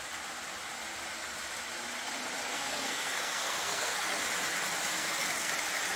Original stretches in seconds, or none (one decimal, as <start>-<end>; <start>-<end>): 0.0-2.5; 4.2-4.9; 5.5-6.0